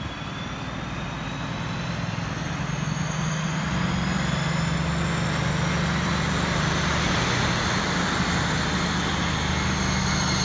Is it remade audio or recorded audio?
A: recorded